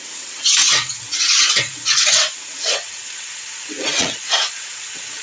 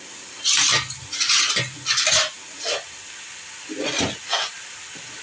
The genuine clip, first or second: second